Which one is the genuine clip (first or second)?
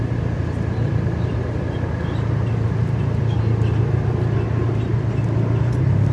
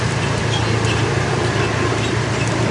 first